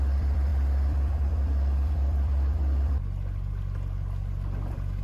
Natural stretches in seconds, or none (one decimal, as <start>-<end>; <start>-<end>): none